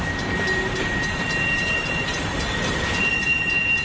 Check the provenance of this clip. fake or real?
real